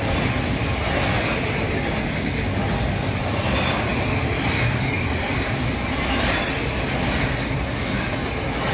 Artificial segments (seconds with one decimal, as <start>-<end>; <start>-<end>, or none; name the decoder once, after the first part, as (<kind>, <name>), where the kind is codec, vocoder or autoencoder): none

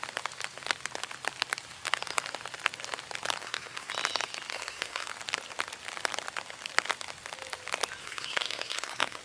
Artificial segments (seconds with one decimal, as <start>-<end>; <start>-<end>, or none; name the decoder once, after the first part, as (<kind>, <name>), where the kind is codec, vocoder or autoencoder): 3.4-3.9 (codec, SNAC); 4.5-5.1; 8.0-9.2

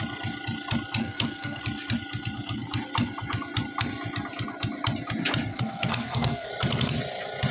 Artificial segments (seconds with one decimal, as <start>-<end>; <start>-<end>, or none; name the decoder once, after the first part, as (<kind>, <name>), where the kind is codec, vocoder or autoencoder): 1.0-1.6 (codec, SNAC); 5.5-6.5